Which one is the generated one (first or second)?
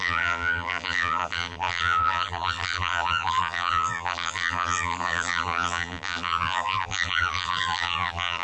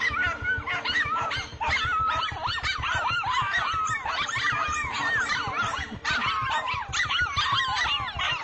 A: first